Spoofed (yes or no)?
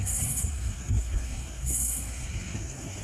yes